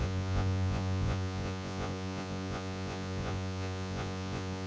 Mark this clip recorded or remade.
remade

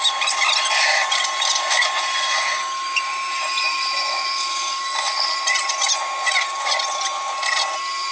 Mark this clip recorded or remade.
recorded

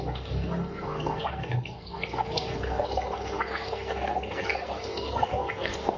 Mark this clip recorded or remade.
remade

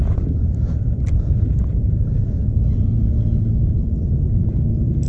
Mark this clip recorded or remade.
remade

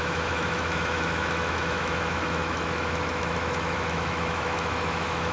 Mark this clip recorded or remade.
remade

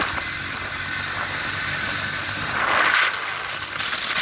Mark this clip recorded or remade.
recorded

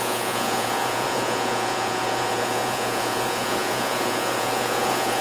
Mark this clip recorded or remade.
remade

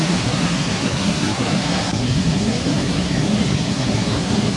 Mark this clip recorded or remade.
remade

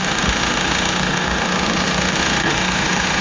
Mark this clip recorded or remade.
remade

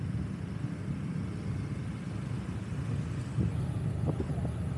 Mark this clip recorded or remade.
recorded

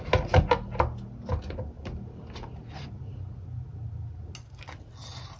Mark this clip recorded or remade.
recorded